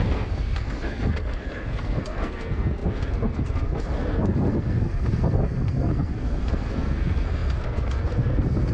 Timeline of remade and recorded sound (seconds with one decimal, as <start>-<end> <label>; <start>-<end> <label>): 0.0-8.7 remade